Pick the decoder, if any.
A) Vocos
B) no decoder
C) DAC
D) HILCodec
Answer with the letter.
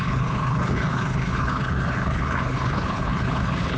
D